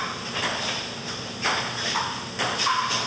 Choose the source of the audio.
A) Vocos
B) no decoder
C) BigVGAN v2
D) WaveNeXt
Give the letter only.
B